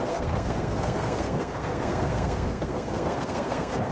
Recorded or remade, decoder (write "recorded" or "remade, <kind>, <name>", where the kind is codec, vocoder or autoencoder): remade, codec, SNAC